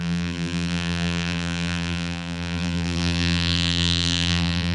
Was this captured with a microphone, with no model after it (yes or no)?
no